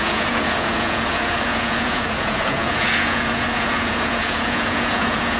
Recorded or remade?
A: remade